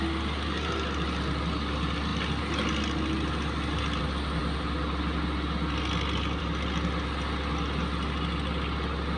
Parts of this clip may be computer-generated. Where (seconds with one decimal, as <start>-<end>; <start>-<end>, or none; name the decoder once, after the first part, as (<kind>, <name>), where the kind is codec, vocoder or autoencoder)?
none